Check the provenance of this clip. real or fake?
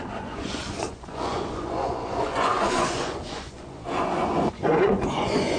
fake